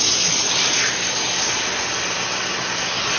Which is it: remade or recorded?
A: recorded